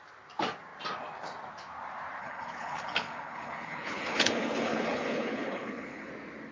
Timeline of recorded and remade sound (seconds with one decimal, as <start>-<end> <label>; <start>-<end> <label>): 0.0-2.2 recorded; 2.2-6.1 remade; 6.1-6.5 recorded